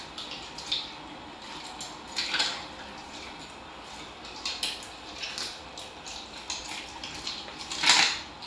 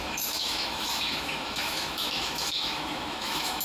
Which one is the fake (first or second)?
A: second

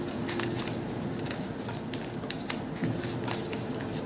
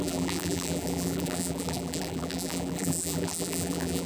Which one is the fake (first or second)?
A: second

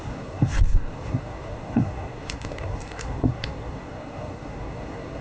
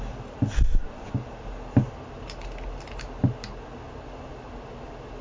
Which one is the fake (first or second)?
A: first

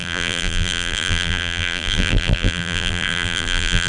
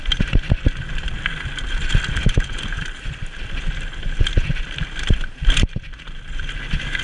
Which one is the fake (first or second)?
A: first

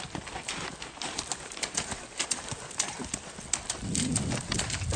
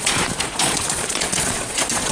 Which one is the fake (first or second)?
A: second